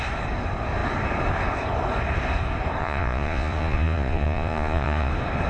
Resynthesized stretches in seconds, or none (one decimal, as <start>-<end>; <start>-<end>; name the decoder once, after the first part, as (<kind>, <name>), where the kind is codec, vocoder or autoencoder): 2.8-5.1 (vocoder, Vocos)